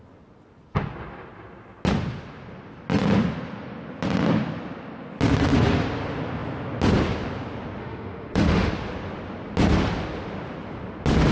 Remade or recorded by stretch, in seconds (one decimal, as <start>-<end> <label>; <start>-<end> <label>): 0.0-7.8 recorded; 7.8-8.7 remade; 8.7-11.3 recorded